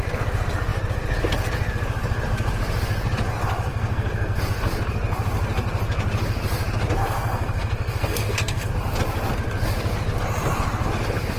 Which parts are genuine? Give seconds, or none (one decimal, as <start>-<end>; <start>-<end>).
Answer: 0.0-3.7; 4.4-7.0; 8.7-11.4